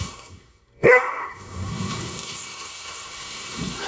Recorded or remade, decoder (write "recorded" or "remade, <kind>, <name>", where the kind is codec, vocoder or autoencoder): remade, codec, SNAC